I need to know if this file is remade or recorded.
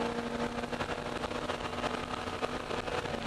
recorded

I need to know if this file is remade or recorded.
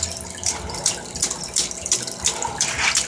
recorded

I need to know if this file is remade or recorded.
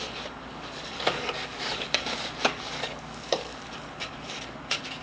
remade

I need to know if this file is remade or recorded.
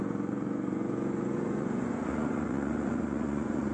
remade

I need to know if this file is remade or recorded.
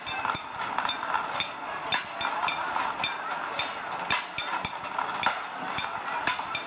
recorded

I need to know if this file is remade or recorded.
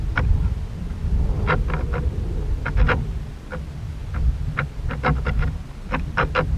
recorded